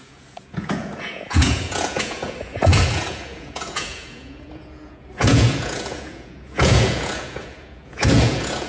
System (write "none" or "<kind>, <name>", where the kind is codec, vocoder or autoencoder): vocoder, Vocos